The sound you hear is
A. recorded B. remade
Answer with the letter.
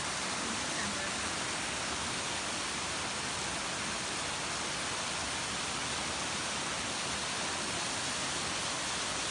A